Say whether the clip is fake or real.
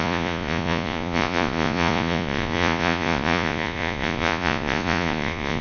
fake